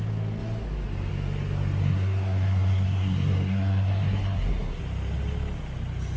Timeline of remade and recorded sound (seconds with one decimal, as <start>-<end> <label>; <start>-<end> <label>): 0.0-1.8 recorded; 1.8-4.8 remade; 4.8-6.2 recorded